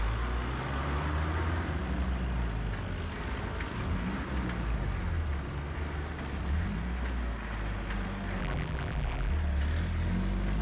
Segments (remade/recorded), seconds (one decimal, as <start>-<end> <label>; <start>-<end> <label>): 0.0-8.4 recorded; 8.4-9.3 remade; 9.3-10.6 recorded